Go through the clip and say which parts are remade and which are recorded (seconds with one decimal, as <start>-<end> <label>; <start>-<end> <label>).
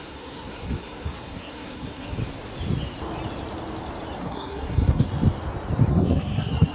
0.0-2.2 remade; 2.2-4.2 recorded; 4.2-5.1 remade; 5.1-5.9 recorded; 5.9-6.7 remade